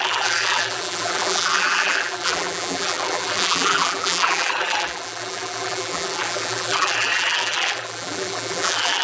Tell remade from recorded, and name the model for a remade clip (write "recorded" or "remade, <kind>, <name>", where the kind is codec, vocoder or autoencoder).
remade, vocoder, BigVGAN v2